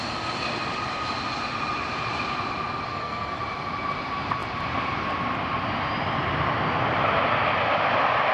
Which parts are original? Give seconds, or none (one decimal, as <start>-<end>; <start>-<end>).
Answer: 0.0-2.9; 3.4-8.3